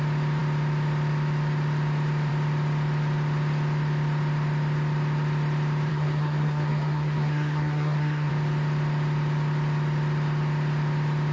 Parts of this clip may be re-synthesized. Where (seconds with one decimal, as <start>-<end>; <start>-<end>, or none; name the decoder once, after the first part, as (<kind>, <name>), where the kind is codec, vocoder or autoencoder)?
5.9-8.3 (codec, SNAC)

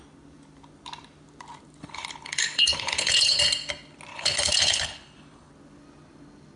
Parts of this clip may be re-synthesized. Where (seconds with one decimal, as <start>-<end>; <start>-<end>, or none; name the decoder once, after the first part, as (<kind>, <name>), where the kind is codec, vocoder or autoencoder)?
1.8-3.4 (codec, HILCodec); 4.1-5.5

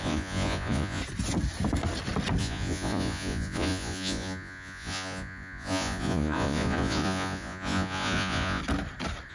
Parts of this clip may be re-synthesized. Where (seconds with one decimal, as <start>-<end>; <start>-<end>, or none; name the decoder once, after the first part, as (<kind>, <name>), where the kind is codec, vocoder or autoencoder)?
0.0-1.0 (vocoder, Vocos); 2.4-8.6

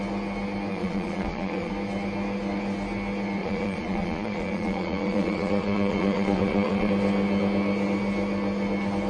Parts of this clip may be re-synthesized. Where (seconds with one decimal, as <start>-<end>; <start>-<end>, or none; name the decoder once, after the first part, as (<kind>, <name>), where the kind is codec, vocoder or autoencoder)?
0.7-1.7 (vocoder, Vocos); 3.4-6.9

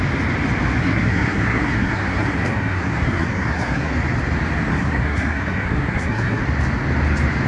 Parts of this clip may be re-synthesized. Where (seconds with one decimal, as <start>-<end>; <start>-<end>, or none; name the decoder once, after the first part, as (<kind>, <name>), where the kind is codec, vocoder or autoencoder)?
0.8-3.9 (codec, SNAC); 4.7-6.4